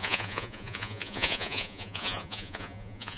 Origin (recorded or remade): remade